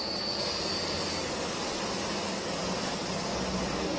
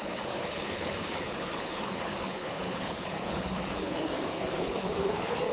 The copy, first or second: second